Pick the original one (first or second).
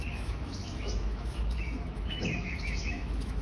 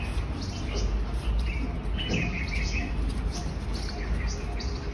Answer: second